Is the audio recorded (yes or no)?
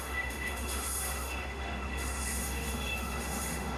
no